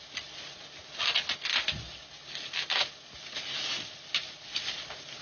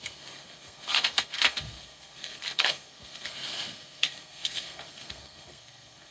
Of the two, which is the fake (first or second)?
second